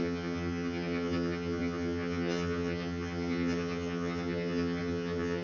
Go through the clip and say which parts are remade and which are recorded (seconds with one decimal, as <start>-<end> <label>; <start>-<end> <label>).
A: 0.0-5.4 remade